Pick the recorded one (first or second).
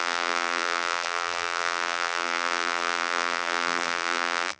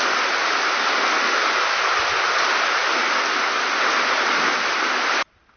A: second